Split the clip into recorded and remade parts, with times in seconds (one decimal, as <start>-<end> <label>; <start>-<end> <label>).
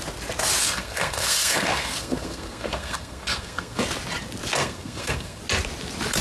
0.0-0.6 recorded; 0.6-3.8 remade; 3.8-4.6 recorded; 4.6-5.4 remade; 5.4-6.2 recorded